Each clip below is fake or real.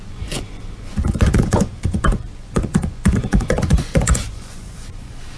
fake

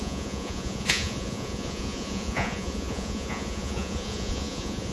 fake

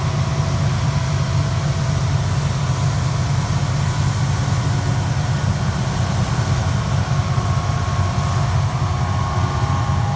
real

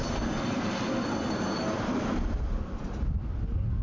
real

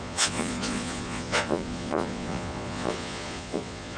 fake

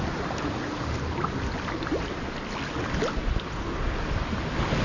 real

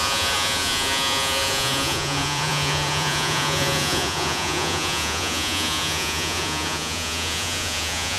fake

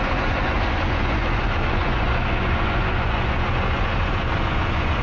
fake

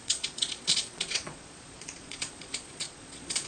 fake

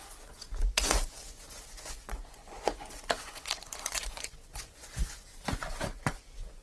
fake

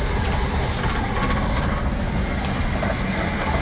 real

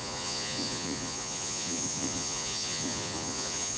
fake